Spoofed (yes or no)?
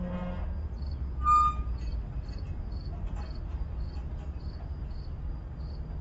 no